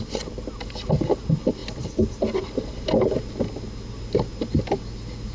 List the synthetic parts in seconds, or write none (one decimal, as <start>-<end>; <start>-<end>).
none